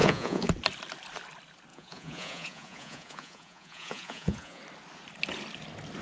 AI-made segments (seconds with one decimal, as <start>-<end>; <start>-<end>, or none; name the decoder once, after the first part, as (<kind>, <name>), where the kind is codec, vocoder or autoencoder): 0.0-0.5 (vocoder, Vocos); 1.7-4.6